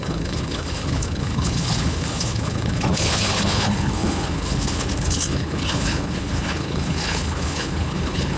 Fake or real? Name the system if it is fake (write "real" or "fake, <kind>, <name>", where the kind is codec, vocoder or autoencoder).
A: fake, codec, HILCodec